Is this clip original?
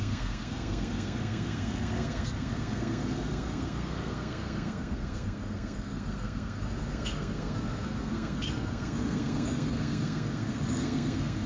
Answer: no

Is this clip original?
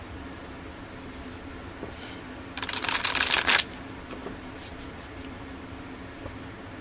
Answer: yes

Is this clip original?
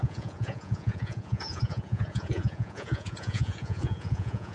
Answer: no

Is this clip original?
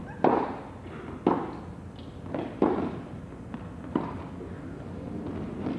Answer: yes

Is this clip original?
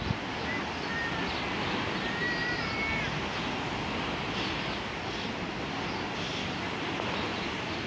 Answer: yes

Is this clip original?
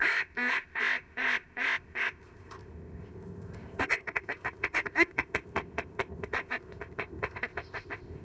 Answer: no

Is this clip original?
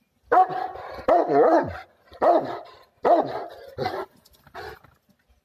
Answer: yes